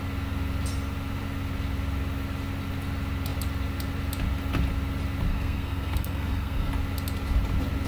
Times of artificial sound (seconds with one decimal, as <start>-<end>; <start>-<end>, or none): 5.3-6.7